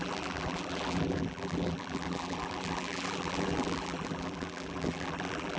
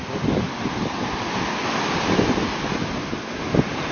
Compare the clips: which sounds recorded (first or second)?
second